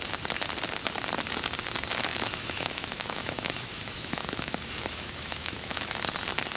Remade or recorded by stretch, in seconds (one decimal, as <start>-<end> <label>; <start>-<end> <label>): 0.0-2.1 recorded; 2.1-6.0 remade; 6.0-6.6 recorded